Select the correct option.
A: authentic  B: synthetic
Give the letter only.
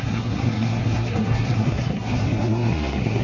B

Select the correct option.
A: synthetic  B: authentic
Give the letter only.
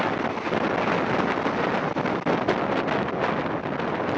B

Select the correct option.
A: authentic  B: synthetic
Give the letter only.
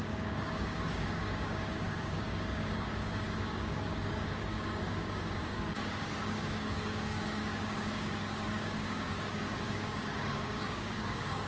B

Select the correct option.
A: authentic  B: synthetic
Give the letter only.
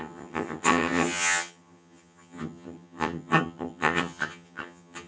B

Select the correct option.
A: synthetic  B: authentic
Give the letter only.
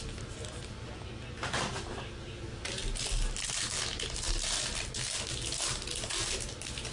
B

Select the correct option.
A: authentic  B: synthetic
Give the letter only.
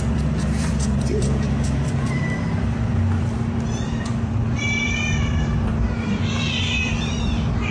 B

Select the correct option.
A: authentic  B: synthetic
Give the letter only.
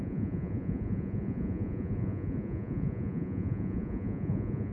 B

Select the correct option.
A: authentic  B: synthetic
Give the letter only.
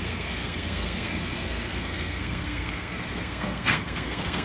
B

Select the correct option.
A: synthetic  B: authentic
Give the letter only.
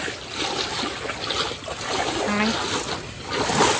B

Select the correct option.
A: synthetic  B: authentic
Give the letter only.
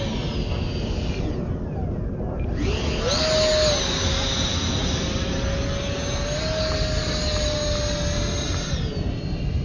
B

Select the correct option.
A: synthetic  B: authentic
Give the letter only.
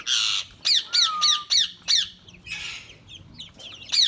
B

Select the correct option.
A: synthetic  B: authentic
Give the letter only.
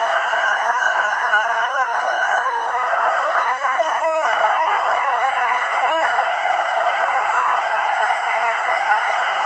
A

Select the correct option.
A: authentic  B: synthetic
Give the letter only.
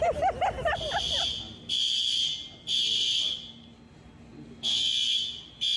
A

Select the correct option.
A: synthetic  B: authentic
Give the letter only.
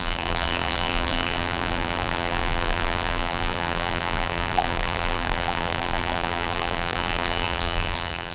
A